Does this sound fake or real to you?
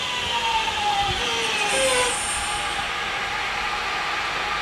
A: real